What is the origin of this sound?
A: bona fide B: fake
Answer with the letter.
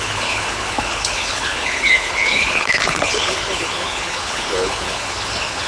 B